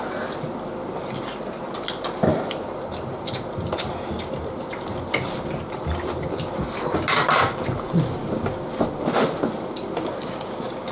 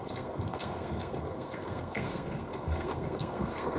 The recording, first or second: first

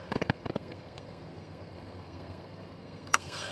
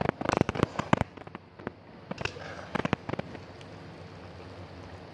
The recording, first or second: second